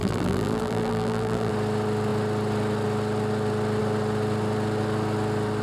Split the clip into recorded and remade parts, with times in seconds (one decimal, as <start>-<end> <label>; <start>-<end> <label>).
0.0-1.5 remade; 1.5-5.6 recorded